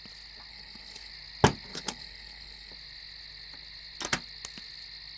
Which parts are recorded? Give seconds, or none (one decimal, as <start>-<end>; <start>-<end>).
0.0-0.5; 1.1-1.7; 2.7-5.2